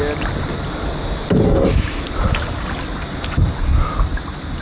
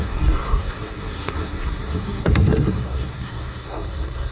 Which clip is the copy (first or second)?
second